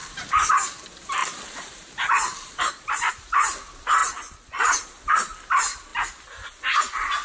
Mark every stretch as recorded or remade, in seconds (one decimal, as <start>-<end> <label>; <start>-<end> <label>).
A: 0.0-0.5 remade; 0.5-1.2 recorded; 1.2-3.1 remade; 3.1-7.2 recorded